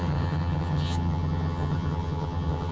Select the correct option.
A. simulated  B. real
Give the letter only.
A